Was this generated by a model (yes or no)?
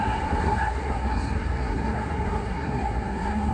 yes